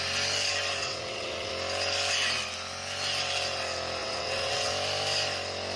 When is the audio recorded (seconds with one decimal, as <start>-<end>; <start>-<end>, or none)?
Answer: 0.0-0.8; 1.5-4.0; 4.7-5.8